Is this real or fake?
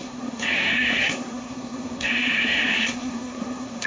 fake